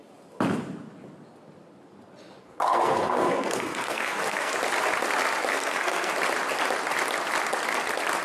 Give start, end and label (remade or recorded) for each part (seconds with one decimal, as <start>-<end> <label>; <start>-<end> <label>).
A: 0.0-2.4 recorded; 2.4-4.5 remade; 4.5-5.5 recorded; 5.5-6.1 remade; 6.1-8.2 recorded